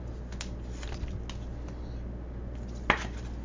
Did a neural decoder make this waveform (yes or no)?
no